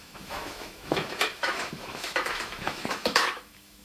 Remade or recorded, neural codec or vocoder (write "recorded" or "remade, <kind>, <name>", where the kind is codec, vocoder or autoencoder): remade, autoencoder, DAC-VAE